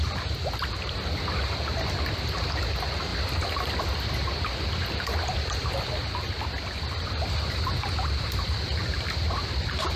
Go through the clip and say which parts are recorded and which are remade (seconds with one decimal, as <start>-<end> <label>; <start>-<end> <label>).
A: 0.0-10.0 recorded